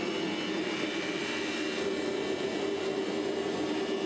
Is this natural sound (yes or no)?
yes